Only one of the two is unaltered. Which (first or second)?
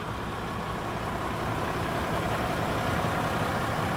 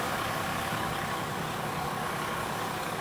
first